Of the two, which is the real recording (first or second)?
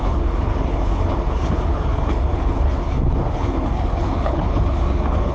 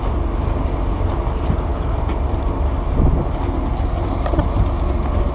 second